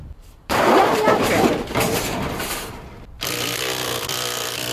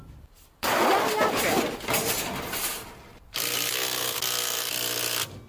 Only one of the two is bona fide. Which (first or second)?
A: second